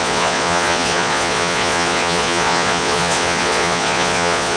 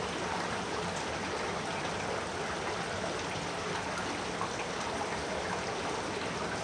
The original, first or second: second